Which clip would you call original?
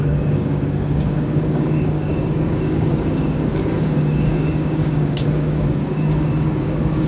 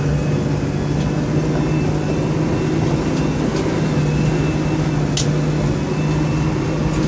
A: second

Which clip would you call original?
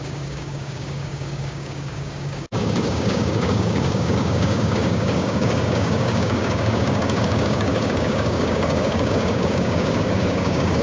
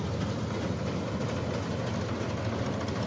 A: second